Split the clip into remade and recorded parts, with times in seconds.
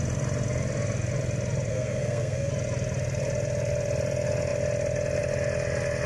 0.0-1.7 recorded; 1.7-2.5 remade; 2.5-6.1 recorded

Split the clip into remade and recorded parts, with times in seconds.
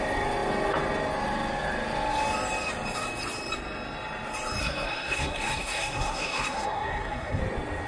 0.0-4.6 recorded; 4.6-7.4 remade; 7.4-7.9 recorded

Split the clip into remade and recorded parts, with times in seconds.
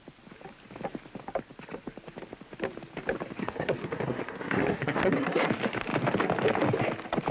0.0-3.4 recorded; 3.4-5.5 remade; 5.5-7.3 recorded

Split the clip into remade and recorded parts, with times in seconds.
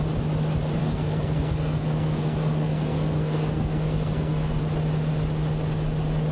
0.0-0.8 recorded; 0.8-4.6 remade; 4.6-6.3 recorded